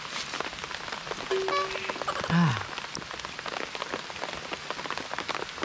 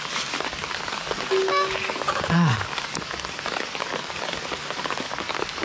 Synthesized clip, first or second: second